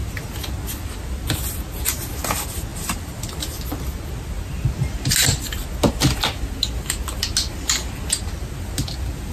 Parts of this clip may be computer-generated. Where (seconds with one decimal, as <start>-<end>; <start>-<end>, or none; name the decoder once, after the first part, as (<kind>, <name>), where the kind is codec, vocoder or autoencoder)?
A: none